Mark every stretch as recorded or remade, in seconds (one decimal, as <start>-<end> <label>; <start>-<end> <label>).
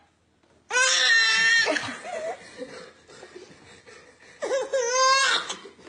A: 0.0-5.9 recorded